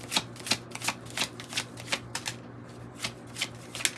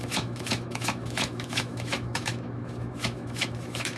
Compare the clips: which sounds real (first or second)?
first